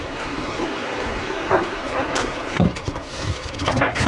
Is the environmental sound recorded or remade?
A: remade